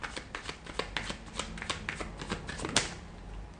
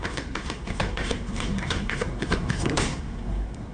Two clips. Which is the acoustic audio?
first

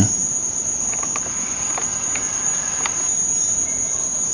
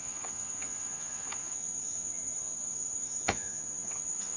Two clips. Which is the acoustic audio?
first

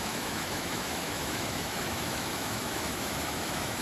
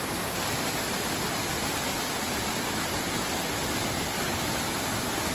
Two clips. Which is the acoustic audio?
second